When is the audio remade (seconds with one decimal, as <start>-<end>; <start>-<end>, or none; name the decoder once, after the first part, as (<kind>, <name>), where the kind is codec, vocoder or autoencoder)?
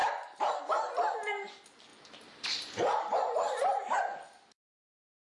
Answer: 0.0-0.6 (vocoder, BigVGAN v2); 1.9-4.0